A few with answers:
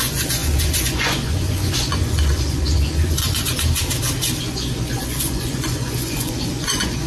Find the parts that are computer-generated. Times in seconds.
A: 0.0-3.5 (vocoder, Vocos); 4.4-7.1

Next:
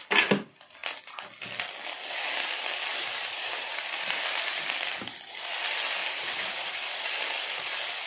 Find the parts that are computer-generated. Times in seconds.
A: 2.9-4.5 (vocoder, BigVGAN v2); 6.0-7.0

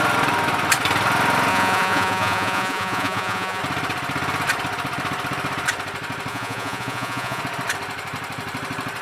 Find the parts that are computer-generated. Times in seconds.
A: 1.5-3.6 (vocoder, Vocos); 6.3-7.4

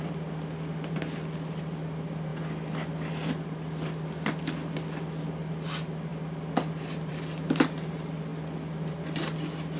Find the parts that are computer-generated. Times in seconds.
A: none